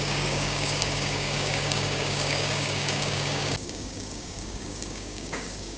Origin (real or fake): fake